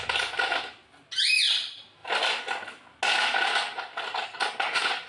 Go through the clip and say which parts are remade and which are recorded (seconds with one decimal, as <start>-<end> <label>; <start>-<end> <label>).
0.0-5.1 recorded